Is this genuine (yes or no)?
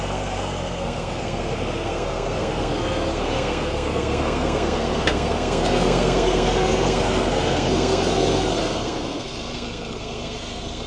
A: no